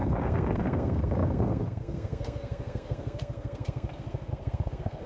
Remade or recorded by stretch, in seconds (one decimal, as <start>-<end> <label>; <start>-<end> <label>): 0.0-5.1 remade